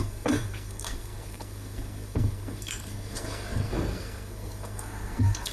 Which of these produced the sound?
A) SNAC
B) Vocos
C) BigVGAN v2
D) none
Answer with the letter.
A